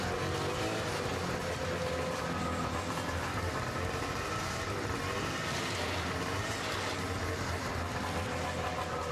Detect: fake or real real